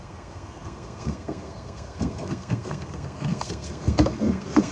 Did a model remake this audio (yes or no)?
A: yes